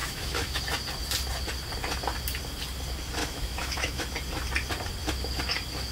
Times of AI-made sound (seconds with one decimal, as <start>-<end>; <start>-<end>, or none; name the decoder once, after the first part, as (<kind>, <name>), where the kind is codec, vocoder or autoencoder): 0.0-0.6 (autoencoder, DAC-VAE); 3.2-4.0